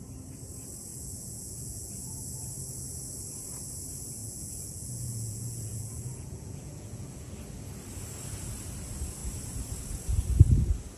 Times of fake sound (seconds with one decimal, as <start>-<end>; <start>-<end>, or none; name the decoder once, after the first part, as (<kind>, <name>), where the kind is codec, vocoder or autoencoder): 0.9-1.9 (vocoder, Vocos); 4.2-7.3